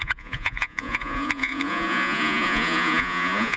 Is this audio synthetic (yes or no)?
yes